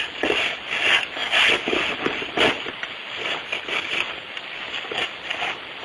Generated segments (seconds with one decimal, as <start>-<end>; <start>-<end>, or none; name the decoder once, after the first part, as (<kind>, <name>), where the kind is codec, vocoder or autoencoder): none

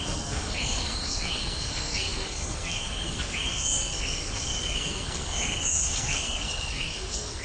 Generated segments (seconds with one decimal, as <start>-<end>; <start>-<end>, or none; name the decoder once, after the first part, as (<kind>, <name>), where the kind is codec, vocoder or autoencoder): 0.0-7.4 (codec, SNAC)

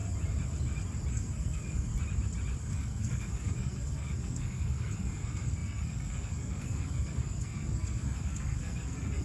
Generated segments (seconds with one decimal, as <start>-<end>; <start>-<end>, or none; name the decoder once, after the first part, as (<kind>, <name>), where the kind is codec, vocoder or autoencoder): 1.1-1.9 (codec, SNAC); 2.6-9.2

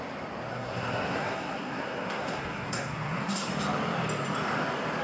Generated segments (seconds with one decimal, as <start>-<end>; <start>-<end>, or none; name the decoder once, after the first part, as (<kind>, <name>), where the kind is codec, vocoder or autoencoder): 0.5-3.5 (codec, SNAC)

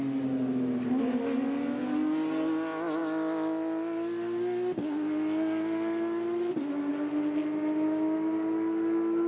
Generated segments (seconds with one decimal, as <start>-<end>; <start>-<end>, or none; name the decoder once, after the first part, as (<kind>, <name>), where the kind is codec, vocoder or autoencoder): none

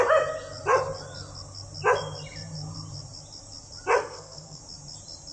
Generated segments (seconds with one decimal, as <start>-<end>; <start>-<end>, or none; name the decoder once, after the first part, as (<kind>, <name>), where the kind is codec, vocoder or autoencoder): 4.0-4.6 (codec, SNAC)

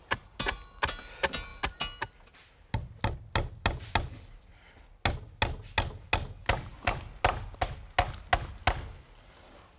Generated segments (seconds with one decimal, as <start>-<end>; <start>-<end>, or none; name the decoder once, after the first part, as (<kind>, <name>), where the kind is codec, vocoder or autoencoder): none